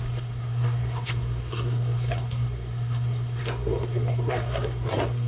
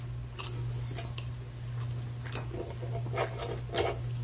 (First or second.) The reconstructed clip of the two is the first